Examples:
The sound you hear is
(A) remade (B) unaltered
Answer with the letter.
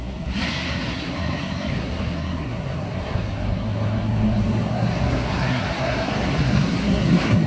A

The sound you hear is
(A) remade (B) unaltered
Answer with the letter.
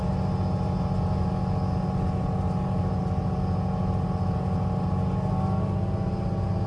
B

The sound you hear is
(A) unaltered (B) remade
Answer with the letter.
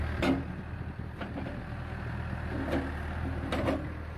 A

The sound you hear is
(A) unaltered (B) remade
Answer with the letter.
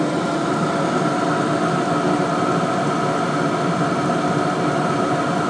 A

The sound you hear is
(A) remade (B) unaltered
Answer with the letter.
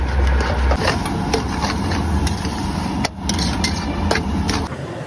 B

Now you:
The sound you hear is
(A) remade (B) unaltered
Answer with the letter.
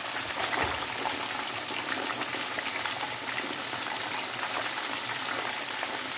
B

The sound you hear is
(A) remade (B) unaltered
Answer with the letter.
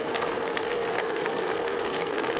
A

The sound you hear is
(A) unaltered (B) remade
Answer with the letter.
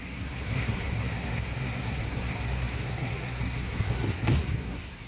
B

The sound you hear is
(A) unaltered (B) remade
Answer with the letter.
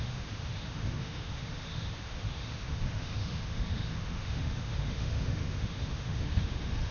B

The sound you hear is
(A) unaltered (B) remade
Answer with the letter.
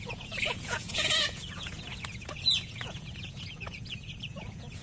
B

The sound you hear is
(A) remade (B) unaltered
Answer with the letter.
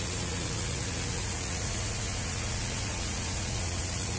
A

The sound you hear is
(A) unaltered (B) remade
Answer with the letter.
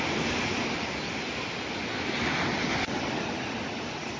A